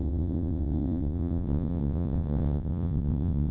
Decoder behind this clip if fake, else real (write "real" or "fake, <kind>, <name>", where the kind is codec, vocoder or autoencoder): fake, vocoder, WaveNeXt